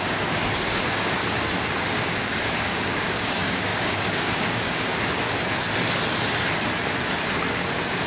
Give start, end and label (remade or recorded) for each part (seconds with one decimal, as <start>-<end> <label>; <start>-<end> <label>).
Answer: 0.0-1.2 remade; 1.2-1.9 recorded; 1.9-4.9 remade; 4.9-7.5 recorded; 7.5-8.1 remade